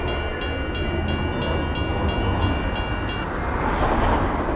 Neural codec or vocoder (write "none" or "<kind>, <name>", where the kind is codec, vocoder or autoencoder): none